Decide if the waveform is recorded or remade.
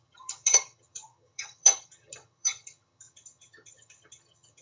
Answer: remade